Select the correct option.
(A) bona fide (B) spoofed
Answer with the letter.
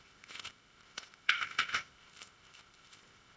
B